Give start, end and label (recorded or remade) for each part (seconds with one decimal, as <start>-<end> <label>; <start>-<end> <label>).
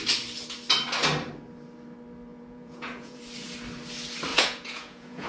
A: 0.0-2.3 recorded; 2.3-3.2 remade; 3.2-4.3 recorded; 4.3-5.3 remade